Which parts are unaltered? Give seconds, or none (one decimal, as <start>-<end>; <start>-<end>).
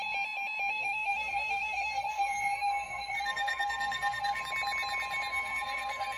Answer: 0.0-0.7; 4.4-5.3